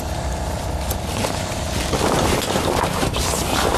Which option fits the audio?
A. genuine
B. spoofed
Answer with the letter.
A